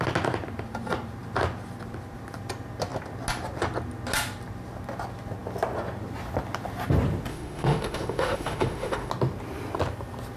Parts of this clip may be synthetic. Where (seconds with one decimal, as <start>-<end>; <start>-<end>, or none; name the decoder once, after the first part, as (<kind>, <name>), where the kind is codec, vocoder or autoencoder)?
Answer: 7.3-9.1 (autoencoder, DAC-VAE)